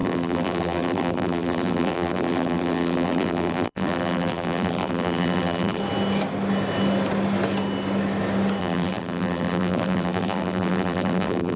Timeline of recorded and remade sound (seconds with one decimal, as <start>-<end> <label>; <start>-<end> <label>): 0.0-5.8 remade; 5.8-8.6 recorded; 8.6-11.6 remade